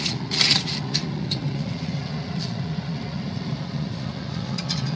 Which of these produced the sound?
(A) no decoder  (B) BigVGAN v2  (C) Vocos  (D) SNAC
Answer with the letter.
C